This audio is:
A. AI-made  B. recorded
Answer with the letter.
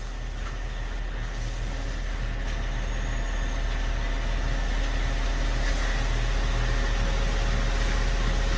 B